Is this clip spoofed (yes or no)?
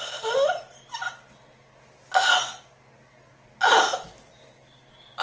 no